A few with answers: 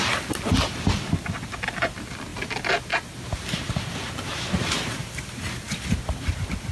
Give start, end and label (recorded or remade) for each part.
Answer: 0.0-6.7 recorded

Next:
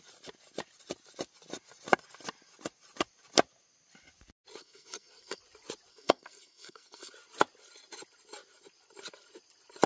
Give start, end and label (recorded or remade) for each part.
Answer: 0.0-4.6 recorded; 4.6-5.4 remade; 5.4-5.9 recorded; 5.9-7.1 remade; 7.1-9.9 recorded

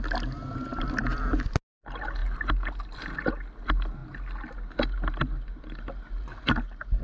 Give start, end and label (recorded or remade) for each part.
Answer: 0.0-7.0 recorded

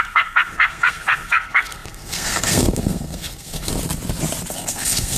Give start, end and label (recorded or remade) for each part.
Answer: 0.0-3.7 remade; 3.7-4.5 recorded; 4.5-5.2 remade

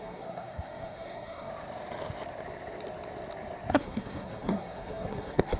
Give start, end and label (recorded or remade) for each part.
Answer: 0.0-1.5 remade; 1.5-3.7 recorded; 3.7-5.6 remade

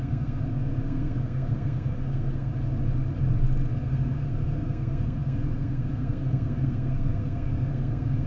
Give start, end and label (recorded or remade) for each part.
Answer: 0.0-2.5 remade; 2.5-3.7 recorded; 3.7-8.3 remade

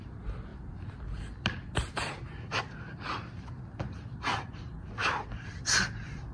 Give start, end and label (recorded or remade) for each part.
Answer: 0.0-6.3 recorded

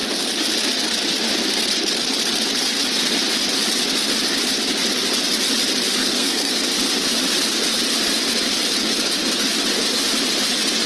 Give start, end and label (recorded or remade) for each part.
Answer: 0.0-6.0 recorded; 6.0-6.5 remade; 6.5-10.9 recorded